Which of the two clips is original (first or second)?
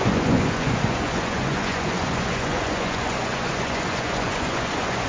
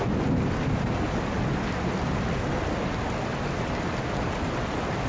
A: second